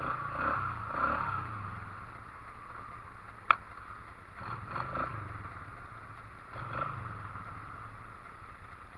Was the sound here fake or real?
real